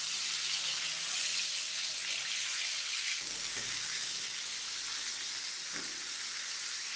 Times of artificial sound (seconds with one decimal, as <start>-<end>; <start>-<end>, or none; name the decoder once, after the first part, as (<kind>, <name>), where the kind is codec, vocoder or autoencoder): 3.1-4.4 (codec, DAC)